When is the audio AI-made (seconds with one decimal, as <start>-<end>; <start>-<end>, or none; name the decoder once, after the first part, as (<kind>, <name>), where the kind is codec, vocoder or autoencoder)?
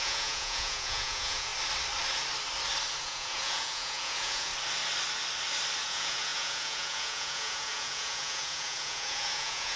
0.0-1.5 (vocoder, Vocos); 3.0-4.5; 5.8-9.8